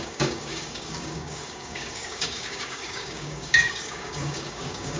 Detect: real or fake fake